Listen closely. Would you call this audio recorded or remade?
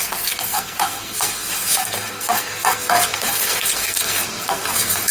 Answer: remade